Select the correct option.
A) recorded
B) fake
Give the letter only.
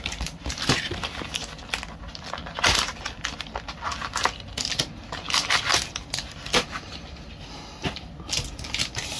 A